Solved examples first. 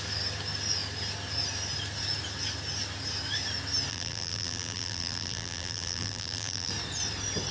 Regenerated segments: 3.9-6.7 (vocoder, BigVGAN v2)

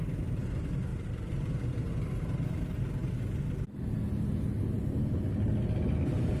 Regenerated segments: 0.9-1.9 (vocoder, BigVGAN v2)

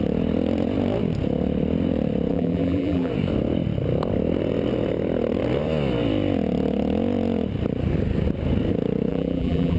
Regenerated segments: 2.3-3.1 (vocoder, BigVGAN v2); 9.1-9.8

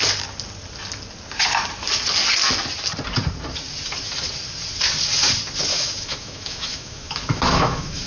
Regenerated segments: 5.7-8.1 (autoencoder, DAC-VAE)

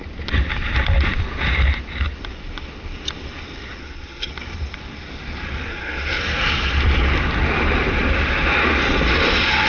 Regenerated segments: 3.8-4.3 (codec, SNAC); 5.7-6.2

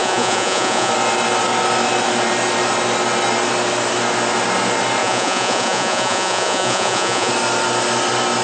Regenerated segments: 0.0-0.9 (vocoder, Vocos); 5.0-7.3

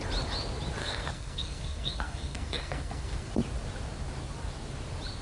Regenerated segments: 0.8-3.3 (codec, SNAC)